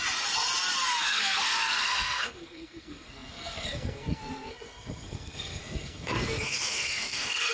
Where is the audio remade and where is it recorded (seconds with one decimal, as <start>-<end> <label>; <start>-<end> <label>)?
0.0-1.0 recorded; 1.0-7.5 remade